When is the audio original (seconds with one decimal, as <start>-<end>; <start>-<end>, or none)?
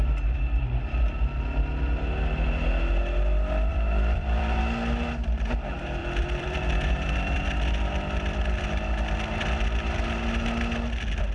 0.0-3.7; 4.6-6.0; 7.4-11.3